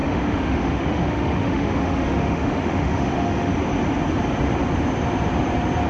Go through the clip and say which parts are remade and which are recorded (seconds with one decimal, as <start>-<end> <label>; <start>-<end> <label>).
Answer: 0.0-3.5 remade; 3.5-5.9 recorded